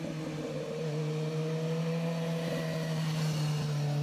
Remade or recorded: recorded